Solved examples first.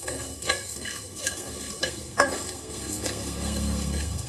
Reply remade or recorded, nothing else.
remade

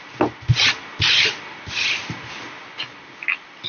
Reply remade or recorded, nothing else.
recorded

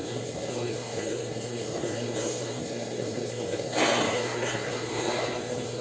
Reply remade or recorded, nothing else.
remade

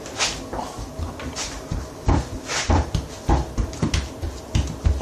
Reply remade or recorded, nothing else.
recorded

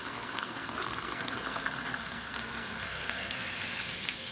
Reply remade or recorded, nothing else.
remade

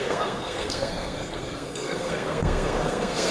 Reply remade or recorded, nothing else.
remade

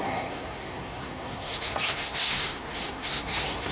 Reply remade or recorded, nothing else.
remade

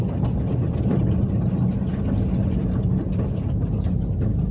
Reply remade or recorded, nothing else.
recorded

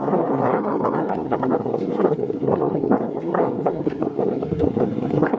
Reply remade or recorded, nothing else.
remade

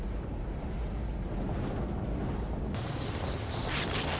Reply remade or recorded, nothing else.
recorded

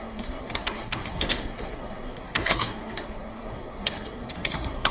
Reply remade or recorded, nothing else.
remade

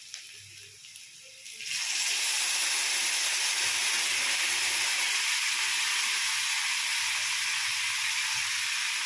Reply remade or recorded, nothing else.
recorded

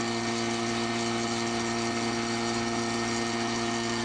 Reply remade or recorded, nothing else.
recorded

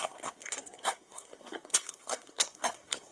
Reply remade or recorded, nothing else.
remade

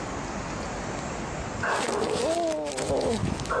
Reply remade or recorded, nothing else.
recorded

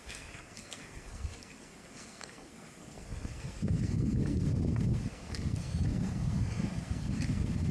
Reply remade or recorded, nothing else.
remade